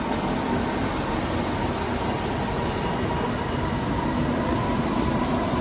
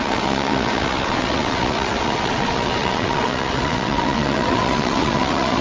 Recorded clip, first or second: first